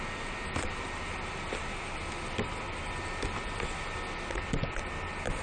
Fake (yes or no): no